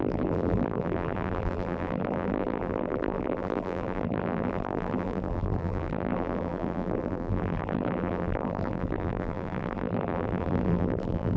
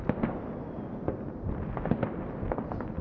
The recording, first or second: second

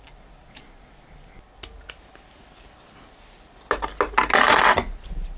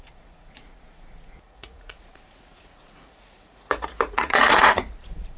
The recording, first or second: first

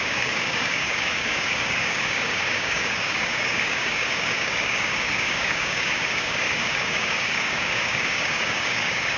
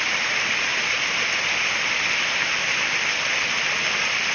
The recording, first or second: second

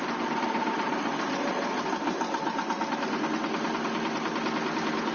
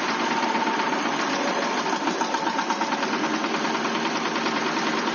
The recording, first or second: first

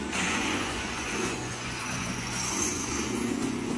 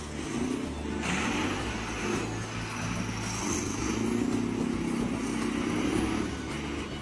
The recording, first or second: second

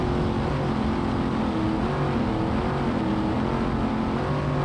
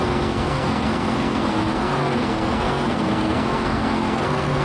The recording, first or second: first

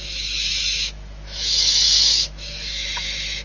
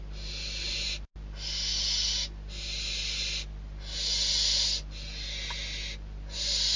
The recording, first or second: second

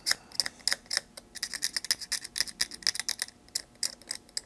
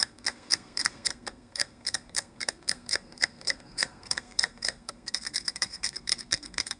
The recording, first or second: first